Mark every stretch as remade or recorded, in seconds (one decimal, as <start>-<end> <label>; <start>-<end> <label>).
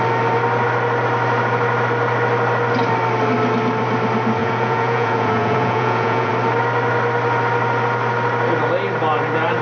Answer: 0.0-4.4 recorded; 4.4-6.3 remade; 6.3-9.6 recorded